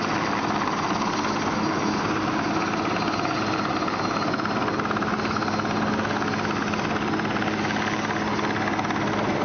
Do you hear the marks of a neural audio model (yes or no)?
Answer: no